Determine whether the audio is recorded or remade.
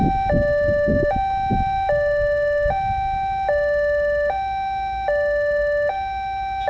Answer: recorded